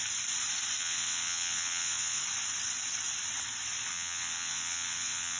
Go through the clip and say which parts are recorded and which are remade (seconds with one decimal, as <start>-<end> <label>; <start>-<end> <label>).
0.0-0.8 recorded; 0.8-2.2 remade; 2.2-3.9 recorded; 3.9-5.4 remade